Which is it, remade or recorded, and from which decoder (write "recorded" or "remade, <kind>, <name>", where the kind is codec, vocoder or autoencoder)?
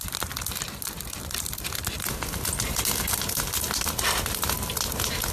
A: recorded